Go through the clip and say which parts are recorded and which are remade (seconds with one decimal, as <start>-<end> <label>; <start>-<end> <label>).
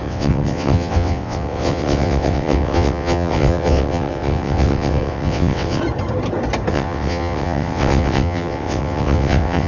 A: 0.0-5.8 remade; 5.8-6.7 recorded; 6.7-9.7 remade